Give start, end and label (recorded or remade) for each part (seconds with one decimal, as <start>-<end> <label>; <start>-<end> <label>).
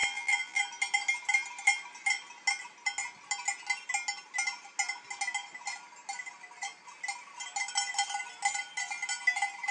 0.0-0.6 remade; 0.6-9.7 recorded